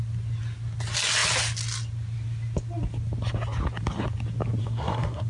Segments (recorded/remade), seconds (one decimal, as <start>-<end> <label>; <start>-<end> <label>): 0.0-4.6 recorded; 4.6-5.3 remade